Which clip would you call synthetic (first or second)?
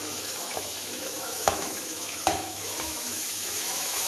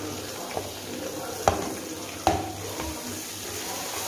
first